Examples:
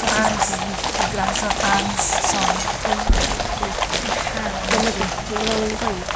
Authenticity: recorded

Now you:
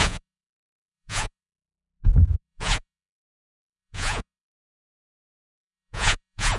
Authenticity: remade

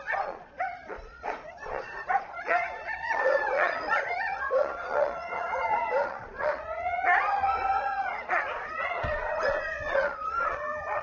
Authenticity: remade